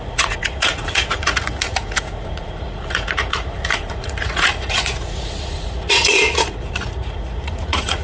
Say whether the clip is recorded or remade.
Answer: remade